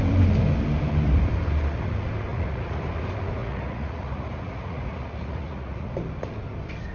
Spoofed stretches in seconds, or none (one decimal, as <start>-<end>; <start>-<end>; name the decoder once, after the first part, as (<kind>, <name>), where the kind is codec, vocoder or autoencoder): 2.3-2.8 (vocoder, Vocos); 3.4-5.9